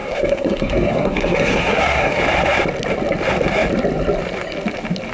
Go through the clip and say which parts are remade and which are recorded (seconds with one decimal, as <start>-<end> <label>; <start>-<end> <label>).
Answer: 0.0-2.2 remade; 2.2-5.1 recorded